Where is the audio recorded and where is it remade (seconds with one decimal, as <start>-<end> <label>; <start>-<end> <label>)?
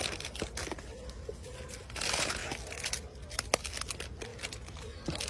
0.0-5.3 recorded